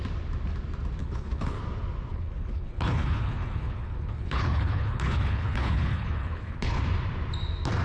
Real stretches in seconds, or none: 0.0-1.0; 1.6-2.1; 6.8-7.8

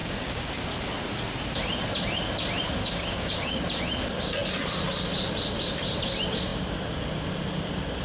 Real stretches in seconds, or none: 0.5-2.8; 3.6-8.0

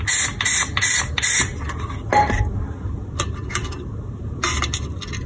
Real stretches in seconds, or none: 0.0-5.3

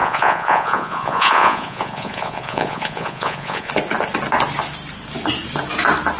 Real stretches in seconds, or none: 3.7-6.2

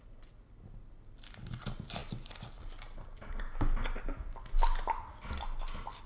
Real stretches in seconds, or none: 0.0-6.1